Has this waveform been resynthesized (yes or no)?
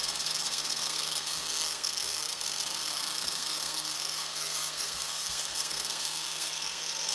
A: yes